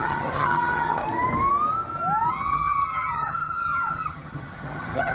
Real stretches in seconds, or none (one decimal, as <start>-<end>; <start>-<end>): 1.0-2.3